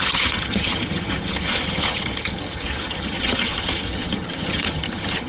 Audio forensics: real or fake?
fake